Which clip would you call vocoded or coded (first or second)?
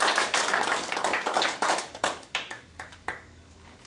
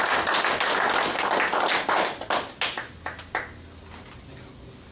first